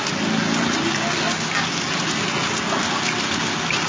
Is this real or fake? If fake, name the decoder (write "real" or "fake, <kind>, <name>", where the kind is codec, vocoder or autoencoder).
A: real